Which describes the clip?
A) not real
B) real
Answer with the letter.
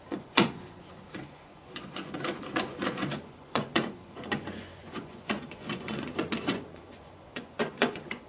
A